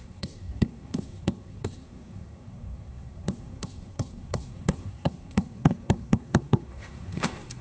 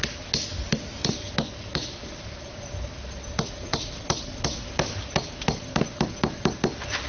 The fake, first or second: first